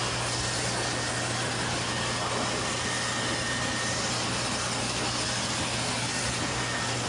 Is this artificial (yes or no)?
no